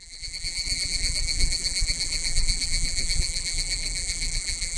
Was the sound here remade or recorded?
remade